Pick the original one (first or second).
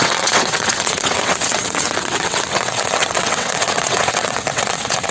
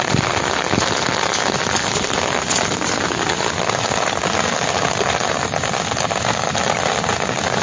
second